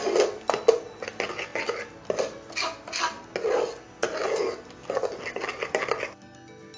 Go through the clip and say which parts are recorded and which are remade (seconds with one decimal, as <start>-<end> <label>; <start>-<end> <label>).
0.0-6.8 recorded